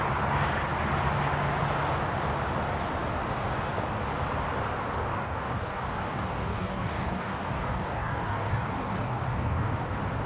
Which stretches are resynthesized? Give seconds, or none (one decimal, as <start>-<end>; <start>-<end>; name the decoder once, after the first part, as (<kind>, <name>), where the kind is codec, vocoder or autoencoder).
5.1-9.7 (codec, DAC)